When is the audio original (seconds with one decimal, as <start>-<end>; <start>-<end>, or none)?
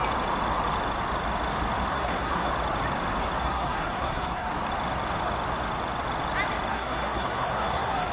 0.0-1.9; 2.5-3.4; 4.5-6.7